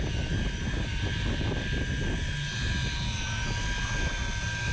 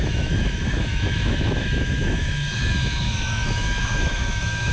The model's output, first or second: second